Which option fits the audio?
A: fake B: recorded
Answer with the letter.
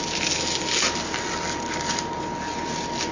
B